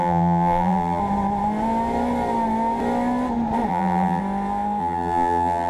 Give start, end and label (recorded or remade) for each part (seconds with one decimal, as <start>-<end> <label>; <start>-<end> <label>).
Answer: 0.0-1.0 remade; 1.0-3.7 recorded; 3.7-4.2 remade; 4.2-4.8 recorded; 4.8-5.7 remade